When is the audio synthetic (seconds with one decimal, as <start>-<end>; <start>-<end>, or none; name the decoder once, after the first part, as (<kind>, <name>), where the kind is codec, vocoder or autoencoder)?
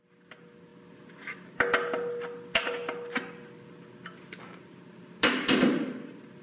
none